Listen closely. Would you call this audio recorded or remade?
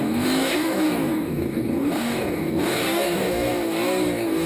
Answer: remade